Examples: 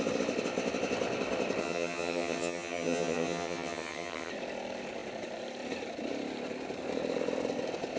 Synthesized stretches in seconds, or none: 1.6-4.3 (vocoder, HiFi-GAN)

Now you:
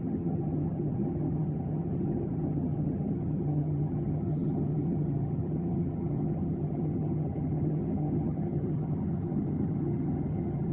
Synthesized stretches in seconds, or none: 0.0-10.7 (vocoder, HiFi-GAN)

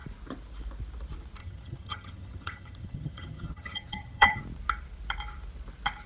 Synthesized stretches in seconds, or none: 1.4-4.4 (vocoder, HiFi-GAN)

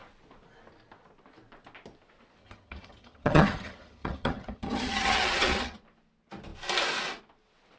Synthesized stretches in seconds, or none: 2.4-5.8 (vocoder, HiFi-GAN)

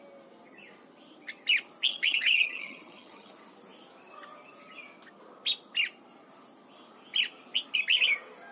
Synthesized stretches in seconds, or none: 1.9-3.3 (vocoder, HiFi-GAN)

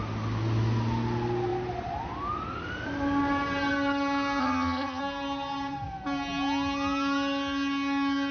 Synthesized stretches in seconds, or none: 4.4-5.0 (vocoder, HiFi-GAN)

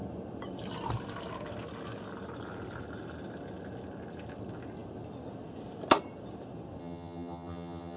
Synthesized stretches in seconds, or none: 6.8-8.0 (vocoder, HiFi-GAN)